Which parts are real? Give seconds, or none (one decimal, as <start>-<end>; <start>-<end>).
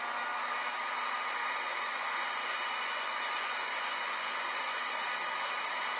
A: 0.0-1.4; 5.0-6.0